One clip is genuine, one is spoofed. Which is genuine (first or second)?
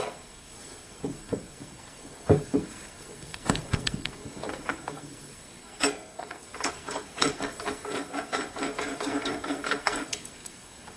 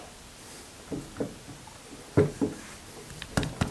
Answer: second